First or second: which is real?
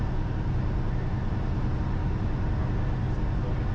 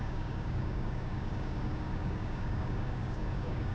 first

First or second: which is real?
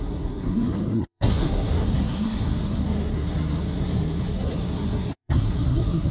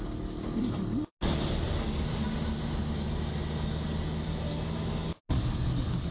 second